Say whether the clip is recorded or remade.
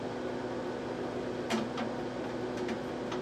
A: recorded